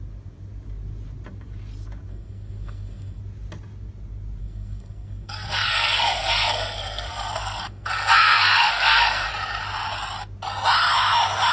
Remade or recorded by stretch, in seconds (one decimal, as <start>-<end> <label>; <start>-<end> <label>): 0.0-2.1 recorded; 2.1-3.2 remade; 3.2-4.4 recorded; 4.4-9.3 remade; 9.3-11.5 recorded